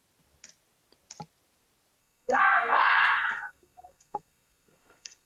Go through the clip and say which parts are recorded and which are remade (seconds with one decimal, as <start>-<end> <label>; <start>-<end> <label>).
0.0-2.0 recorded; 2.0-5.3 remade